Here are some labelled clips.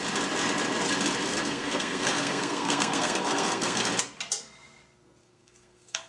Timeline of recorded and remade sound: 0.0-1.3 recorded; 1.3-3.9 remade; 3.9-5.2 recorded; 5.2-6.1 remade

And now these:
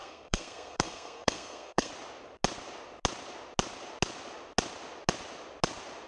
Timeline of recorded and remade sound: 0.0-1.9 remade; 1.9-6.1 recorded

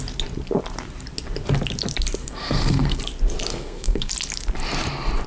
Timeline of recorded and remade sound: 0.0-2.2 recorded; 2.2-3.0 remade; 3.0-3.5 recorded; 3.5-4.1 remade; 4.1-5.3 recorded

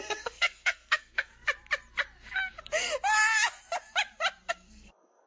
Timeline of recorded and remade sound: 0.0-1.3 remade; 1.3-4.5 recorded; 4.5-5.3 remade

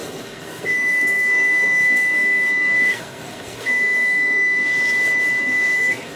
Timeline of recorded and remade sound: 0.0-4.7 remade; 4.7-5.4 recorded; 5.4-6.2 remade